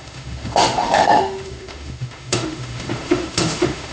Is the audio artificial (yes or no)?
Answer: yes